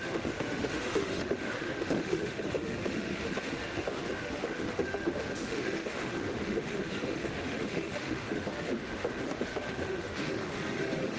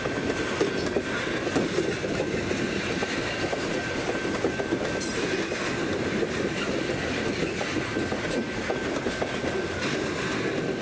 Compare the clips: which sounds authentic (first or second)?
second